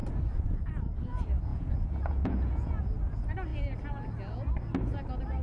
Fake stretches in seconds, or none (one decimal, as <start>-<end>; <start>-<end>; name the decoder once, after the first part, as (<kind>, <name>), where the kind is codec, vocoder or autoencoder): 1.5-2.8 (vocoder, Vocos)